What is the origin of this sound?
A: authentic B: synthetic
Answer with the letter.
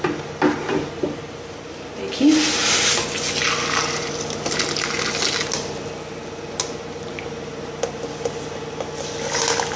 A